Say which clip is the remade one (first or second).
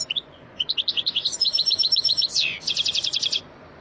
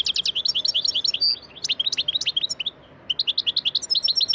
first